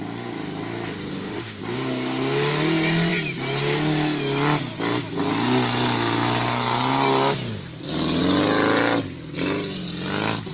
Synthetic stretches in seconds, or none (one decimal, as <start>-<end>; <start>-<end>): 1.1-1.6